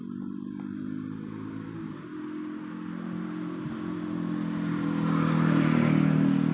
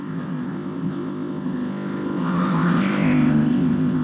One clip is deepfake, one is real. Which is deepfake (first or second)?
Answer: second